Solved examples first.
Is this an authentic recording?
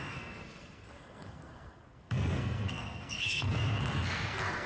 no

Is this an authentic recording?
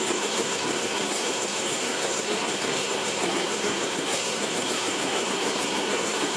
no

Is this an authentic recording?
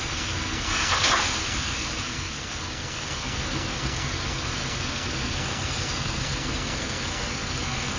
no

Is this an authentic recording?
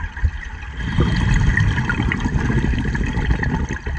yes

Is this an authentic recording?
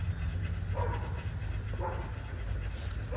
yes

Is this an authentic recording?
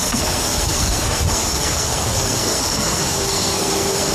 no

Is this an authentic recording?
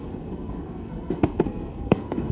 no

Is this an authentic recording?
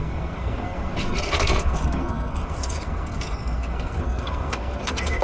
no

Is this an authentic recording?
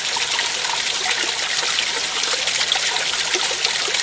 yes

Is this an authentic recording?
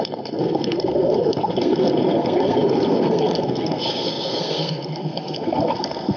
no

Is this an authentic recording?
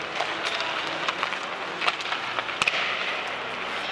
yes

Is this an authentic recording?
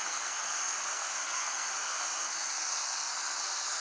no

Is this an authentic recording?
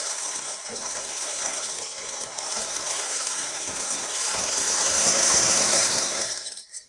no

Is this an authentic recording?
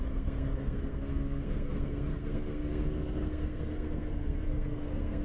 no